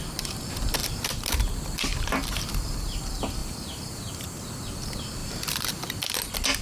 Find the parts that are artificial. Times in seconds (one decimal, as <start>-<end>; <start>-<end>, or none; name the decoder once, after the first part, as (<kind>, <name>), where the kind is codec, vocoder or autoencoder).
0.8-3.0 (vocoder, BigVGAN v2); 3.4-4.6; 5.2-5.9